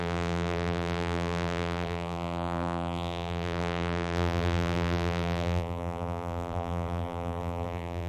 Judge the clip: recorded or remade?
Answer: remade